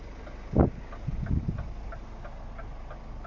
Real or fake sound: real